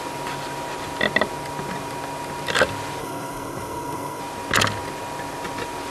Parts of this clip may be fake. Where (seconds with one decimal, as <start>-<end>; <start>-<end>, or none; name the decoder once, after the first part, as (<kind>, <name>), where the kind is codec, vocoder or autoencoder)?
3.0-4.2 (codec, SNAC)